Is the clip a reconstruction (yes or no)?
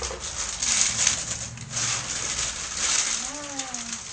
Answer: no